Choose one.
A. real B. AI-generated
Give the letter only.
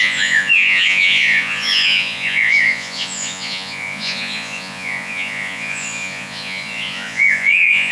B